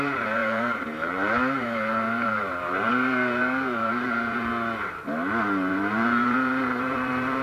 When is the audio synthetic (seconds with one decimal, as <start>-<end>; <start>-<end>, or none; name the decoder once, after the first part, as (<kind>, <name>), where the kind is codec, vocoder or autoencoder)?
0.0-4.5 (vocoder, BigVGAN v2); 5.7-7.4